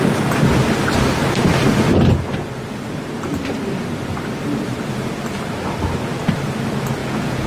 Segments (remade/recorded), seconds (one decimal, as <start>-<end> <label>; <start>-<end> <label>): 0.0-7.0 recorded; 7.0-7.5 remade